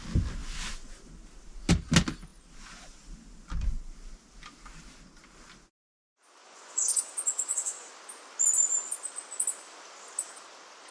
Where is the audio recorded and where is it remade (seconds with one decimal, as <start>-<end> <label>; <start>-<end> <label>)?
0.0-6.4 recorded; 6.4-7.9 remade; 7.9-10.9 recorded